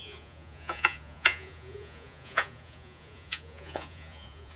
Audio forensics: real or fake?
fake